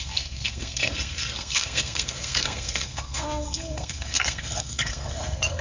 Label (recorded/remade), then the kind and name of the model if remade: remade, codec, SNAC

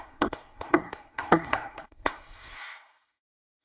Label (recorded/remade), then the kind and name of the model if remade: remade, codec, SNAC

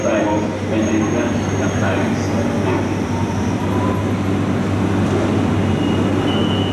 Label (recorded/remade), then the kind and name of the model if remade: recorded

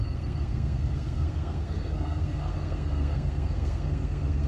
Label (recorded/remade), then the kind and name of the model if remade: remade, codec, SNAC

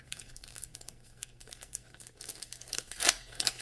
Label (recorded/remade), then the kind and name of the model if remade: remade, codec, SNAC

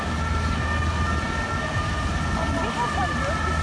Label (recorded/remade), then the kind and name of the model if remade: recorded